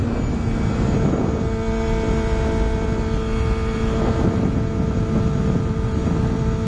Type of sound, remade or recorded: recorded